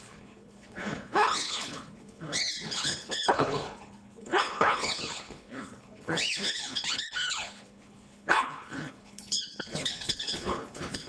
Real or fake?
fake